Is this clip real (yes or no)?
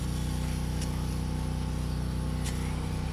yes